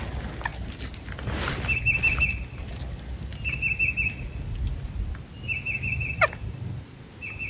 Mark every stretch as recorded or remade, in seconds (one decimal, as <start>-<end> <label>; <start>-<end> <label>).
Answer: 0.0-7.5 recorded